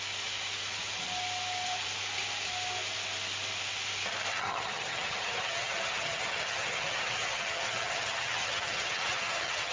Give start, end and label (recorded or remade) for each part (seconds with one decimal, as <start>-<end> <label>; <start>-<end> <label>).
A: 0.0-4.3 recorded; 4.3-9.7 remade